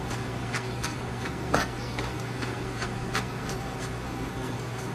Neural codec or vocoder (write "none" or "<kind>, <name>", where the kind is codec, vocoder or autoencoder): codec, SNAC